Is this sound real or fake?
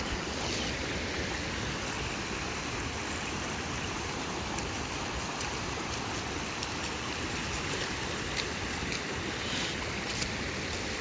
real